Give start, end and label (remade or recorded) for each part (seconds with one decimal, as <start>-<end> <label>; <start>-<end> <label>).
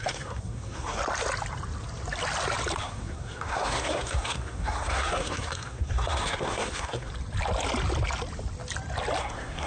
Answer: 0.0-1.0 remade; 1.0-2.8 recorded; 2.8-7.1 remade; 7.1-9.2 recorded; 9.2-9.7 remade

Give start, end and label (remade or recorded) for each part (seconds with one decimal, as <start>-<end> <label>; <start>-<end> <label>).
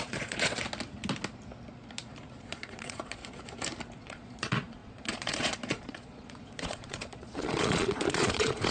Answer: 0.0-0.6 remade; 0.6-2.4 recorded; 2.4-3.2 remade; 3.2-4.0 recorded; 4.0-8.7 remade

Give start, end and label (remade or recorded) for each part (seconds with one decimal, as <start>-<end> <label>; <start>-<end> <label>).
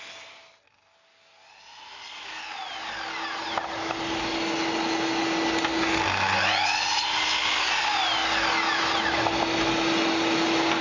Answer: 0.0-10.8 recorded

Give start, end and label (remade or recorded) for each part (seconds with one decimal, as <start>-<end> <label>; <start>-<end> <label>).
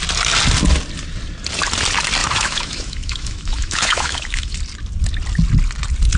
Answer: 0.0-2.2 recorded; 2.2-4.6 remade; 4.6-6.2 recorded